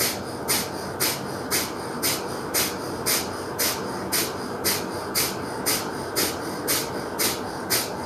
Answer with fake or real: real